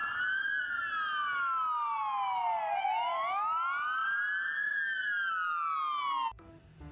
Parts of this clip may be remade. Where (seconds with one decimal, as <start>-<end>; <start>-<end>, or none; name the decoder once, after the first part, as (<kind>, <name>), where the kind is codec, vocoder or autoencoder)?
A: none